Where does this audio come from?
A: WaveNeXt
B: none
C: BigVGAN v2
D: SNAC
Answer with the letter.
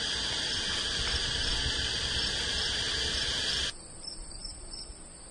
B